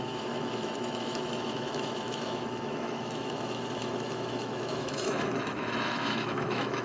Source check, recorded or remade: remade